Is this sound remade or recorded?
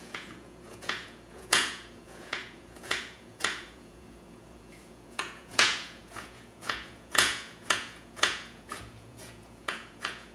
remade